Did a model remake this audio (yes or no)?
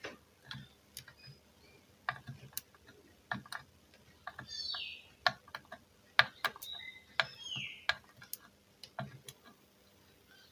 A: no